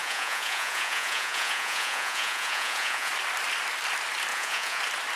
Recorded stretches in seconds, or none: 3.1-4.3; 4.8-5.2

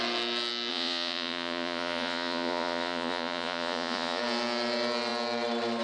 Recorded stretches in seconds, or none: 0.0-0.7; 4.2-5.8

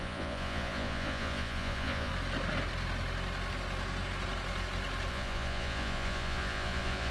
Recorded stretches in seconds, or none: 2.1-5.1